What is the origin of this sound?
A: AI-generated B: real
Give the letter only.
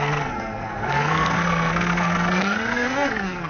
A